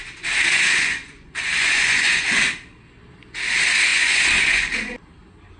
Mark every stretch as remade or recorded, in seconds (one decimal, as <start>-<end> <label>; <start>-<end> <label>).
0.0-0.4 recorded; 0.4-2.4 remade; 2.4-3.9 recorded; 3.9-4.7 remade; 4.7-5.6 recorded